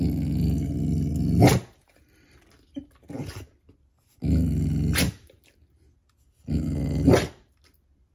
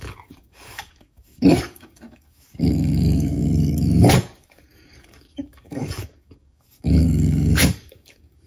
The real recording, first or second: first